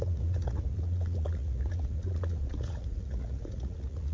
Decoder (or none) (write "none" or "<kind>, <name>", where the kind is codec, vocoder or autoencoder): vocoder, Vocos